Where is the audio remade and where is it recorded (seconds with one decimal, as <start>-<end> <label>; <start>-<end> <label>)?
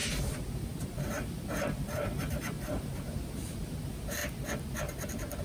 0.0-4.2 remade; 4.2-5.4 recorded